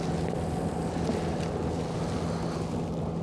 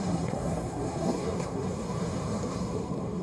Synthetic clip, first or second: second